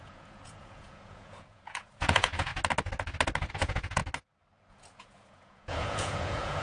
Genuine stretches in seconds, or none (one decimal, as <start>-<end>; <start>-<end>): 2.5-3.5; 4.0-4.7